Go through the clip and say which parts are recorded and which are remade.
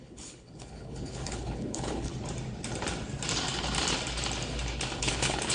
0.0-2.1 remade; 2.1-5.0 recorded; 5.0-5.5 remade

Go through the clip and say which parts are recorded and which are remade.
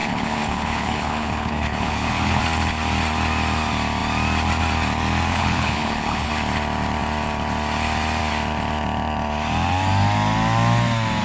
0.0-2.4 remade; 2.4-5.3 recorded; 5.3-6.3 remade; 6.3-11.2 recorded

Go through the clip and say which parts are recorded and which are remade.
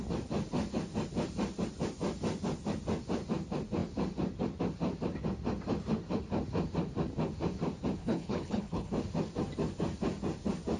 0.0-8.0 recorded; 8.0-8.9 remade; 8.9-10.8 recorded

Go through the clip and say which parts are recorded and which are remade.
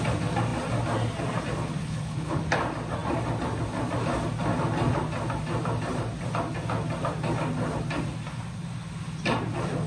0.0-1.8 recorded; 1.8-2.4 remade; 2.4-9.9 recorded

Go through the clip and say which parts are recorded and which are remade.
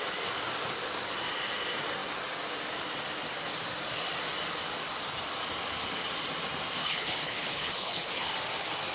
0.0-6.8 recorded; 6.8-8.3 remade; 8.3-8.9 recorded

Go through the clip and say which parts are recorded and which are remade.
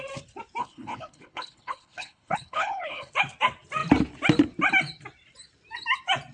0.0-0.6 recorded; 0.6-3.1 remade; 3.1-6.3 recorded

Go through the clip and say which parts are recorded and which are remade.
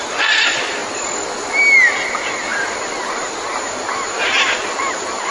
0.0-5.3 recorded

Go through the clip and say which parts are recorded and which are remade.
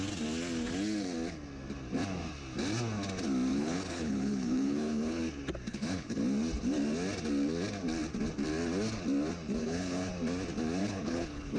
0.0-3.5 recorded; 3.5-5.2 remade; 5.2-5.7 recorded; 5.7-6.2 remade; 6.2-9.6 recorded; 9.6-10.1 remade; 10.1-10.8 recorded; 10.8-11.6 remade